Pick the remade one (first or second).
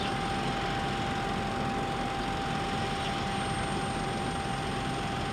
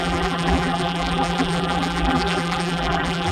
second